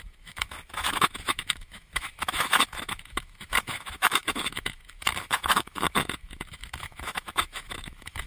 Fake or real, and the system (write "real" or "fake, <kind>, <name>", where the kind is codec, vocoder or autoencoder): fake, autoencoder, DAC-VAE